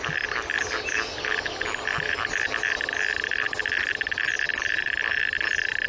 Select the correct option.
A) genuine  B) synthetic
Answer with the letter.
A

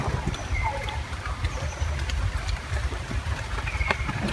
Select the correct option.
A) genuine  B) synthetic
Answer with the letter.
B